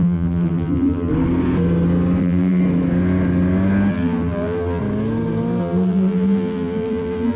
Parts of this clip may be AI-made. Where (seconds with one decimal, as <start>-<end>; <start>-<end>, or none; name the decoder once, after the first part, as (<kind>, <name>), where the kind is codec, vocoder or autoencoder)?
0.0-1.1 (vocoder, BigVGAN v2); 2.2-2.6; 3.9-4.8; 5.6-7.4